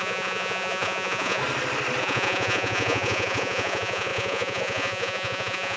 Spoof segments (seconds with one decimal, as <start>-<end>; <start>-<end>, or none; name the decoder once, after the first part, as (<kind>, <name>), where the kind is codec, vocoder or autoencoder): 0.0-1.4 (vocoder, Vocos); 2.0-5.8